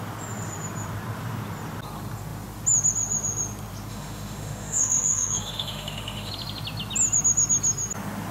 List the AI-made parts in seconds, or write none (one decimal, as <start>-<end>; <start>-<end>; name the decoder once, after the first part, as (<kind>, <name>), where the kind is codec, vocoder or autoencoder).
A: 3.9-6.3 (autoencoder, DAC-VAE)